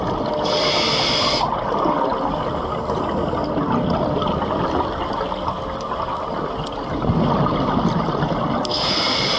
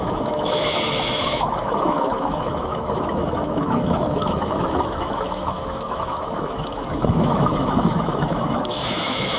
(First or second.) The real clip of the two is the first